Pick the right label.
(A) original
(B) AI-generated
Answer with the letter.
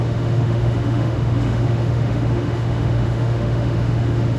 B